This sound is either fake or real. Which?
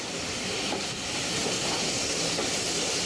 real